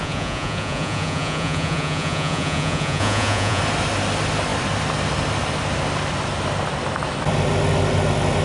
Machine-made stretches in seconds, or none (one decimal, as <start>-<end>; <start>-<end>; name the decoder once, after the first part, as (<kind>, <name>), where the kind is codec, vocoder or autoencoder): 0.0-3.6 (vocoder, Vocos)